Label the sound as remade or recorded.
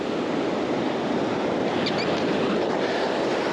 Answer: recorded